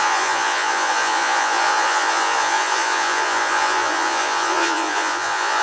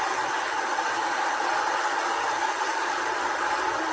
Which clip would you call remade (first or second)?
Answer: first